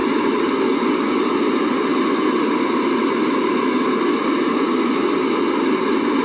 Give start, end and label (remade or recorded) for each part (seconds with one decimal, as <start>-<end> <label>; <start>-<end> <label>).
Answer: 0.0-6.2 recorded